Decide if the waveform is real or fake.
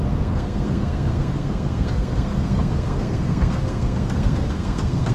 fake